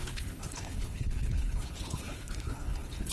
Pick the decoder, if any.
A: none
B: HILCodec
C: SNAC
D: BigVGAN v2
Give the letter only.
B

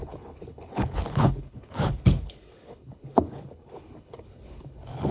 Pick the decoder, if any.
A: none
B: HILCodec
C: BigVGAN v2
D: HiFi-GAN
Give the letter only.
B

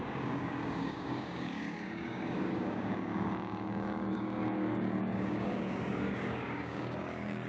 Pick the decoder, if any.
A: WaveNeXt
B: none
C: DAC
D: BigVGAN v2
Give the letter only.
C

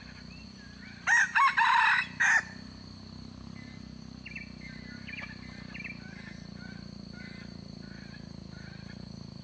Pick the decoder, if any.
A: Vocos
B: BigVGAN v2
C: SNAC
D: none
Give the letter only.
D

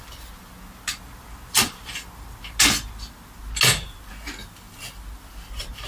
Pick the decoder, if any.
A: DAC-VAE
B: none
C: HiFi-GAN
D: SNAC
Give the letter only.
B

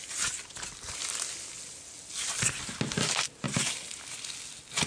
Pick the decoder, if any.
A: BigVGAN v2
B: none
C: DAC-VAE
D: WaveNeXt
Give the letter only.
B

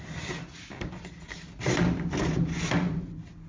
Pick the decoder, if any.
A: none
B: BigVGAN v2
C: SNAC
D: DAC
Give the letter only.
A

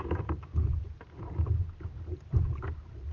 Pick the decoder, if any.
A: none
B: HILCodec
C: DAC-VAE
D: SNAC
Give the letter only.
A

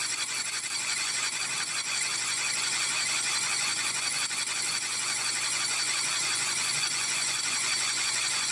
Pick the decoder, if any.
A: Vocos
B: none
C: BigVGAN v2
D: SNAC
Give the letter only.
A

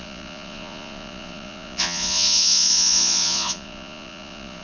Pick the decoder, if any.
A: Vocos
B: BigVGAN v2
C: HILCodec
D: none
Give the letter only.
A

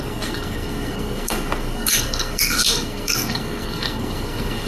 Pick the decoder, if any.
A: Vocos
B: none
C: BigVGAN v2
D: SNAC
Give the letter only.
D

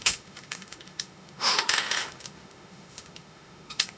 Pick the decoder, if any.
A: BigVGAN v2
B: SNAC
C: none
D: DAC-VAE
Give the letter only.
D